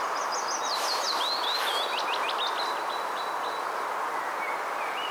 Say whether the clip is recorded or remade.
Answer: recorded